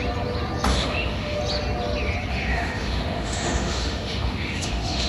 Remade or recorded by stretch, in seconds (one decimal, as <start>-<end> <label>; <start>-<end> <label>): 0.0-0.7 recorded; 0.7-1.4 remade; 1.4-2.3 recorded; 2.3-5.1 remade